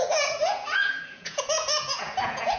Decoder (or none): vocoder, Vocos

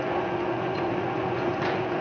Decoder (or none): vocoder, Vocos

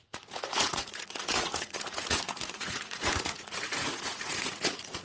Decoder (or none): vocoder, Vocos